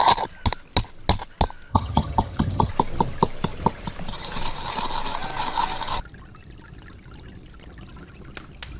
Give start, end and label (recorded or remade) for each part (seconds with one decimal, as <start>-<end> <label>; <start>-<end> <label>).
0.0-1.7 recorded; 1.7-2.7 remade; 2.7-8.8 recorded